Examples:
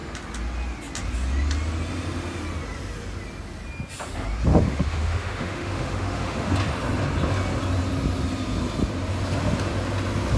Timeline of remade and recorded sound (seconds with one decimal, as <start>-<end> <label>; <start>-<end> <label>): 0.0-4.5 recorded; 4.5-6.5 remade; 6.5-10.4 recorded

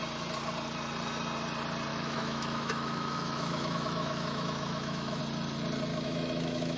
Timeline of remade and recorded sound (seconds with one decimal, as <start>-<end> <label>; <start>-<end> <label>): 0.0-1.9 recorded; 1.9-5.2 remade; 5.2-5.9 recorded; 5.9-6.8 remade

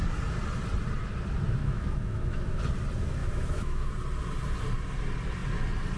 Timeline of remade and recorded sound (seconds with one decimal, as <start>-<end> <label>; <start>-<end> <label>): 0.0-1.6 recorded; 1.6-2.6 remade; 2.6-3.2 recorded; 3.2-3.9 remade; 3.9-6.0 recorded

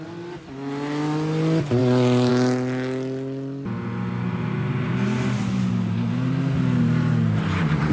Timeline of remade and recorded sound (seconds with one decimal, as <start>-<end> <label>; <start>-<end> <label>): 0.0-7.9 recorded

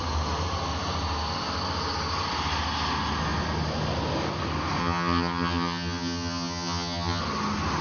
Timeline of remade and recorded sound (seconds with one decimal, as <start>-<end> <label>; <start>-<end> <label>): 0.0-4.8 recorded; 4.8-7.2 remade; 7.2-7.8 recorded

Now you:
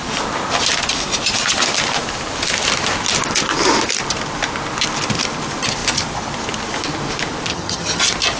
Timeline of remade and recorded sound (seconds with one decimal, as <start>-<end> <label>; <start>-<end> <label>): 0.0-7.5 recorded; 7.5-8.0 remade; 8.0-8.4 recorded

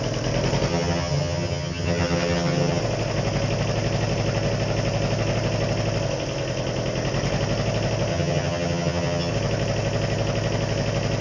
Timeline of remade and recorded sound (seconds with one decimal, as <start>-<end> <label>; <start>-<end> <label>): 0.0-0.7 recorded; 0.7-2.8 remade; 2.8-8.1 recorded; 8.1-9.3 remade; 9.3-11.2 recorded

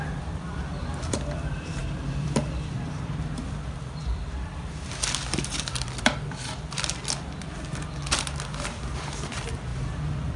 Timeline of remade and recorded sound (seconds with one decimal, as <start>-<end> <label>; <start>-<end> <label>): 0.0-9.7 remade; 9.7-10.4 recorded